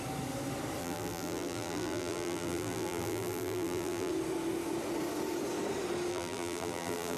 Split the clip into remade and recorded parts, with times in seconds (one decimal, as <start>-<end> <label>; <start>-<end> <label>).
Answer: 0.0-0.8 recorded; 0.8-4.1 remade; 4.1-6.1 recorded; 6.1-7.2 remade

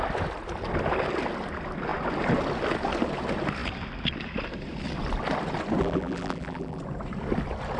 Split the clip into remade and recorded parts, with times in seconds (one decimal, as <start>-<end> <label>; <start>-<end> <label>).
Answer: 0.0-5.8 recorded; 5.8-6.8 remade; 6.8-7.8 recorded

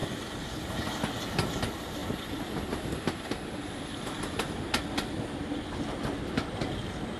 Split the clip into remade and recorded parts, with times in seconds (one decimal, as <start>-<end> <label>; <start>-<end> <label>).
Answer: 0.0-7.2 recorded